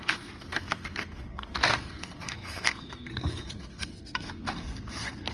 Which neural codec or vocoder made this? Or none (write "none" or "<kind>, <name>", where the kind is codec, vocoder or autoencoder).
codec, SNAC